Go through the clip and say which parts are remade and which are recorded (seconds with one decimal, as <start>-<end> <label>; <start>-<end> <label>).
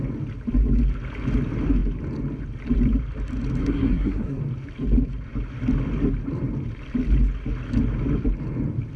0.0-3.6 recorded; 3.6-4.4 remade; 4.4-9.0 recorded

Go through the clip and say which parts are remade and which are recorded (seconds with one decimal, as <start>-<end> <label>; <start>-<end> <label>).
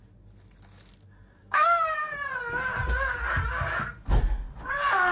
0.0-1.4 recorded; 1.4-2.3 remade; 2.3-5.1 recorded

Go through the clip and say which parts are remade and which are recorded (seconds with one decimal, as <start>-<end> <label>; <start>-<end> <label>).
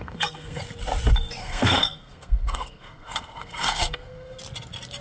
0.0-0.6 remade; 0.6-1.4 recorded; 1.4-4.4 remade; 4.4-5.0 recorded